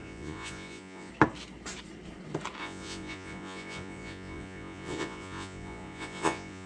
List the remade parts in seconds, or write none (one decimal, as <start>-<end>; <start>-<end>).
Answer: 0.0-1.1; 2.6-6.7